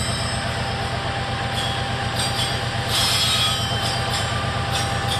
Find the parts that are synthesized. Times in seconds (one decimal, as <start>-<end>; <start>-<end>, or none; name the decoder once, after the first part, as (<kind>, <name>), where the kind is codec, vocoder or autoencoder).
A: 2.0-5.2 (vocoder, BigVGAN v2)